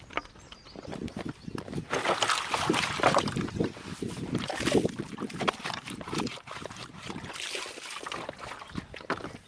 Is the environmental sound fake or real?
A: real